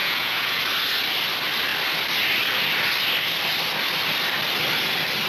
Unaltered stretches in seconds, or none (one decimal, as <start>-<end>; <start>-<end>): 0.6-5.3